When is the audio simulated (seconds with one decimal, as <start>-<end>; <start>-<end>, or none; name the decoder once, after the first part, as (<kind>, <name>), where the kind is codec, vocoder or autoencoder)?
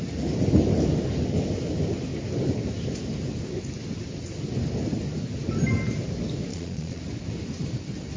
6.5-7.0 (vocoder, Vocos)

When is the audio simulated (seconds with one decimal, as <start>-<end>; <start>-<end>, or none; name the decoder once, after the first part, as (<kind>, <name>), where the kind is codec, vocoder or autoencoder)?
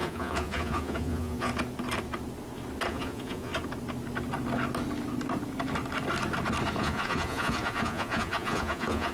0.0-1.5 (vocoder, Vocos); 2.9-3.5; 6.8-9.1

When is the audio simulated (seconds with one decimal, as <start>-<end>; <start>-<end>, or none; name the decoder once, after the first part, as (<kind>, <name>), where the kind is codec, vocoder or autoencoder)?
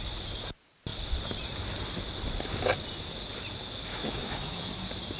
3.9-4.7 (autoencoder, DAC-VAE)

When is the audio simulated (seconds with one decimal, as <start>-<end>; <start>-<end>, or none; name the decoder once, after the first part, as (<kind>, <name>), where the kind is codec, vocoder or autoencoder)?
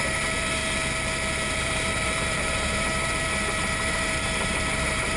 0.0-0.6 (vocoder, BigVGAN v2); 1.5-5.2